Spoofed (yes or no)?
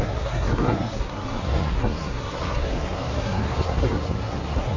yes